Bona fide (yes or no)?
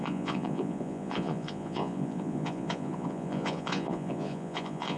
no